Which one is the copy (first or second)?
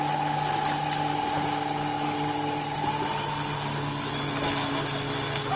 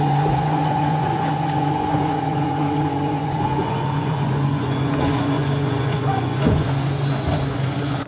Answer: second